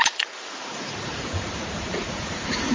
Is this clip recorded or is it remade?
remade